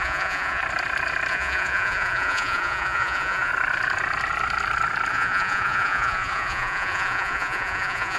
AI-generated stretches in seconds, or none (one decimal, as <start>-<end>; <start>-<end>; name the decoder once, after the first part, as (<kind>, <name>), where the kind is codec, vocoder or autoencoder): 0.0-0.6 (vocoder, Vocos); 1.3-3.5; 5.1-8.2